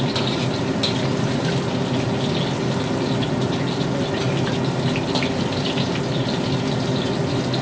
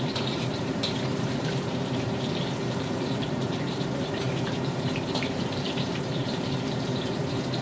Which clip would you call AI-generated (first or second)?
second